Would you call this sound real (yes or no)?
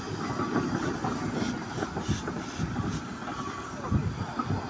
no